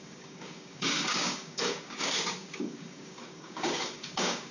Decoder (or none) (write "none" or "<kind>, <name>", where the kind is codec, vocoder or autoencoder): codec, DAC